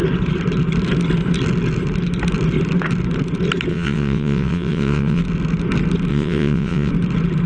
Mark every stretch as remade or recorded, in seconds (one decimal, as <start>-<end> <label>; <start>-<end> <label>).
0.0-3.7 recorded; 3.7-5.2 remade; 5.2-6.1 recorded; 6.1-6.9 remade; 6.9-7.5 recorded